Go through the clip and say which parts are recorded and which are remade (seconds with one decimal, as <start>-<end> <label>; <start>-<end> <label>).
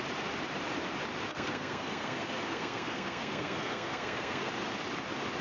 0.0-1.3 recorded; 1.3-4.5 remade; 4.5-5.4 recorded